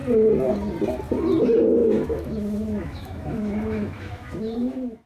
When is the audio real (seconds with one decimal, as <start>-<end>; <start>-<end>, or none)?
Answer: 0.0-1.8